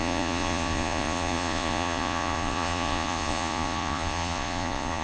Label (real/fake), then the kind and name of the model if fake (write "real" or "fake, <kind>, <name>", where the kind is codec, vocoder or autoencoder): fake, vocoder, Vocos